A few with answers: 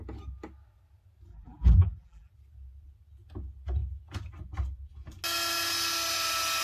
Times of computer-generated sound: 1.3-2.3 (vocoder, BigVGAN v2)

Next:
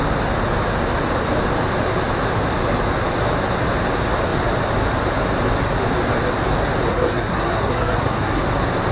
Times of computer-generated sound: 6.9-8.4 (codec, SNAC)

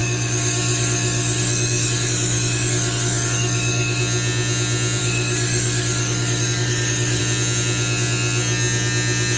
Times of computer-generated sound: 0.0-4.0 (codec, DAC); 5.0-7.2

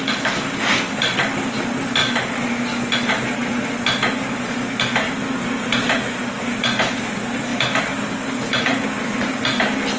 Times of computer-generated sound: none

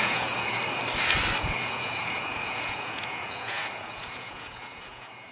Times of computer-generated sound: 0.0-0.6 (vocoder, Vocos); 1.4-5.3

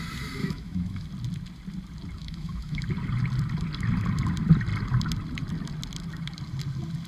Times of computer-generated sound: 0.4-1.1 (autoencoder, DAC-VAE); 2.2-2.8

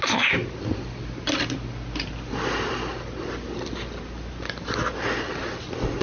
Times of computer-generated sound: none

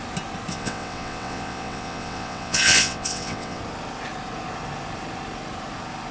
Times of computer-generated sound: 0.5-3.6 (vocoder, WaveNeXt)